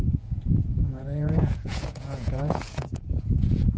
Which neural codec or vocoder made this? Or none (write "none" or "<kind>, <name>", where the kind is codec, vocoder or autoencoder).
vocoder, Vocos